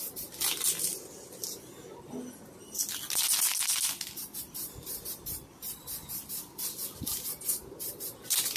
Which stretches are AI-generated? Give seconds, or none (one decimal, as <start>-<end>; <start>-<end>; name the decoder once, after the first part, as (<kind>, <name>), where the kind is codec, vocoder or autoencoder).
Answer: 0.0-0.9 (vocoder, BigVGAN v2); 4.2-5.8

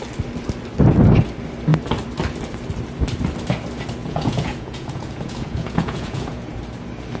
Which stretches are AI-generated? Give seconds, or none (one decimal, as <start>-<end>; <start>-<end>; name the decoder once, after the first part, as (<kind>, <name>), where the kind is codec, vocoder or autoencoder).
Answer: 4.0-6.6 (vocoder, Vocos)